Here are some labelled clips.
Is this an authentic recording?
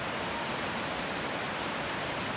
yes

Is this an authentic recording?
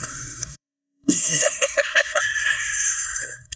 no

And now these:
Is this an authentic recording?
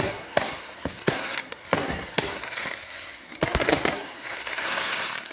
no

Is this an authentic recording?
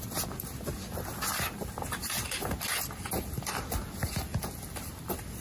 yes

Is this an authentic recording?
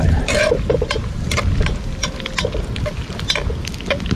yes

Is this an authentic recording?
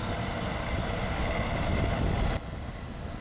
yes